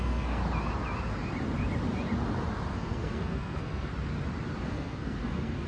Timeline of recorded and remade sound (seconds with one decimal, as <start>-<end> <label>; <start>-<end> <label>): 0.0-0.4 remade; 0.4-2.7 recorded; 2.7-3.9 remade; 3.9-4.6 recorded; 4.6-5.7 remade